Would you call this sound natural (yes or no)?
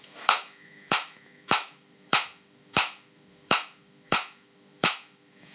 no